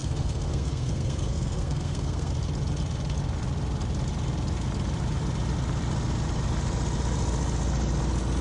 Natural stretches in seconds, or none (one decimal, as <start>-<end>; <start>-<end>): 2.3-8.4